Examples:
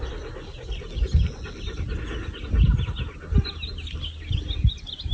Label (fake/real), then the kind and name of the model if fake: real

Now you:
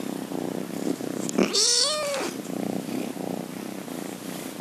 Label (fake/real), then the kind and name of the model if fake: real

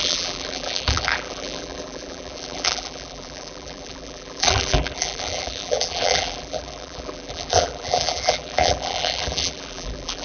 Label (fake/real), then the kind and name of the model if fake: fake, vocoder, BigVGAN v2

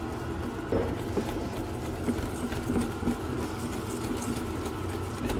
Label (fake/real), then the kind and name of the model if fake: real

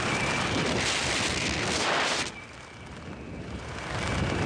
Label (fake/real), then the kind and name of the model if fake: real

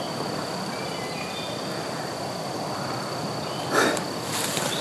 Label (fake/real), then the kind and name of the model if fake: real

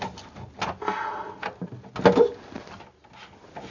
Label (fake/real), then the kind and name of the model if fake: real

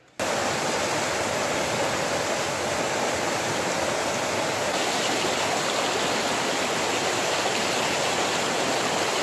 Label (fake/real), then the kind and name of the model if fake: real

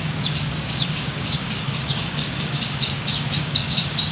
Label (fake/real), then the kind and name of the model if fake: fake, codec, DAC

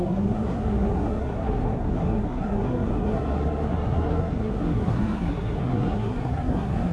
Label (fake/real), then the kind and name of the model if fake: fake, codec, SNAC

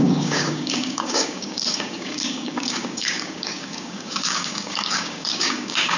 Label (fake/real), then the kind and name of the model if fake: fake, codec, DAC